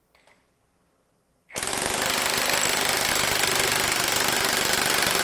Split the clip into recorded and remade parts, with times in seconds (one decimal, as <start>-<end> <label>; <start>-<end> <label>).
0.0-5.2 recorded